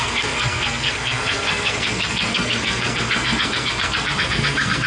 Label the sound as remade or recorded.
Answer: remade